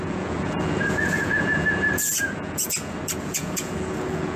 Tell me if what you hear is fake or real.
fake